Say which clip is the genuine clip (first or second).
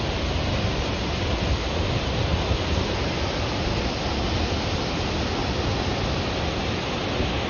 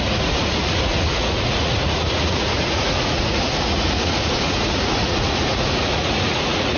first